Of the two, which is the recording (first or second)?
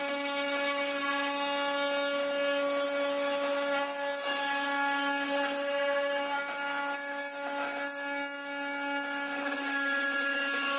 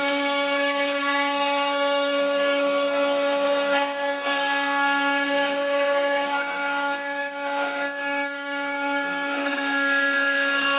first